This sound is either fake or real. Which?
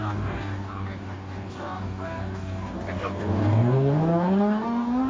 fake